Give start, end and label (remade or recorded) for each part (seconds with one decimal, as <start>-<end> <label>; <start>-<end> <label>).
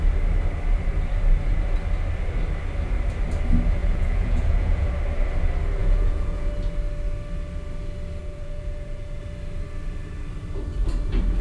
0.0-3.8 recorded; 3.8-4.9 remade; 4.9-5.8 recorded; 5.8-6.5 remade; 6.5-8.2 recorded; 8.2-9.2 remade; 9.2-11.4 recorded